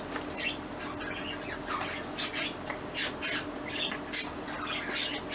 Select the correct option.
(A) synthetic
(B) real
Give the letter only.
B